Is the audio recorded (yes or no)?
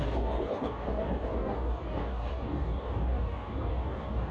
no